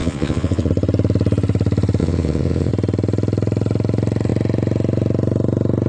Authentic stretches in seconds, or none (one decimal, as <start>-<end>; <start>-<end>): 0.7-2.0; 2.7-5.9